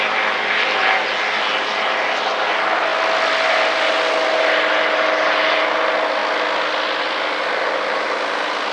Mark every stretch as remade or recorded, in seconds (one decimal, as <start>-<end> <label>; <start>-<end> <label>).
0.0-8.7 recorded

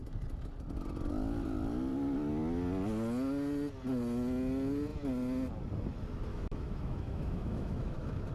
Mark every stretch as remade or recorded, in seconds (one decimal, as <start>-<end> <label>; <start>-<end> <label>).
0.0-6.3 recorded; 6.3-8.3 remade

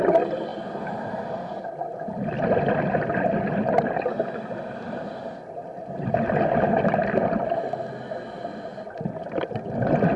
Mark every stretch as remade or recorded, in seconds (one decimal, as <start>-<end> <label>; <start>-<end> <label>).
0.0-10.2 recorded

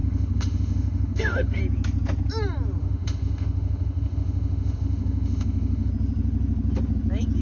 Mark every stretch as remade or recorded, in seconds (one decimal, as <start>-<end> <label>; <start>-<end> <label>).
0.0-1.6 remade; 1.6-2.8 recorded; 2.8-5.9 remade; 5.9-7.4 recorded

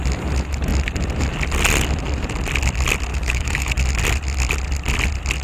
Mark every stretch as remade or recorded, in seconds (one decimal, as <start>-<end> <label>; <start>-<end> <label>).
0.0-3.1 recorded; 3.1-3.7 remade; 3.7-5.4 recorded